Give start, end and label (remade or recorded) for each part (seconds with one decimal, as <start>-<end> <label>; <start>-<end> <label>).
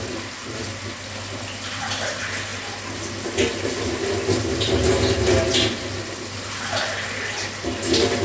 0.0-8.2 recorded